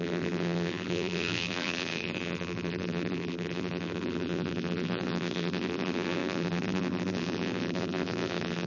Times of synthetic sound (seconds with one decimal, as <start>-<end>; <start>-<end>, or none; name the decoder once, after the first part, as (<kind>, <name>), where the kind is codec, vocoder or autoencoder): 0.0-8.7 (vocoder, BigVGAN v2)